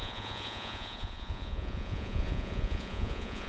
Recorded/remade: remade